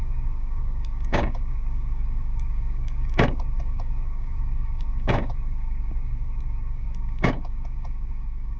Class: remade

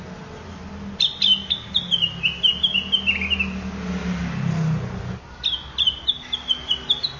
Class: recorded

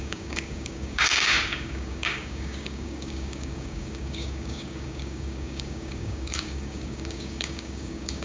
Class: remade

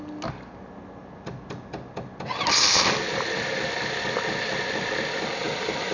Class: recorded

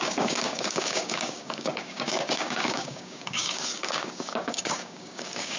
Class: remade